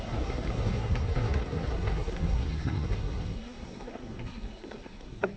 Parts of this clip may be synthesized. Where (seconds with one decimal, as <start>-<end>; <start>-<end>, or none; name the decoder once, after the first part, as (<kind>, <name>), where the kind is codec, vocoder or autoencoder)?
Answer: 0.0-5.4 (codec, SNAC)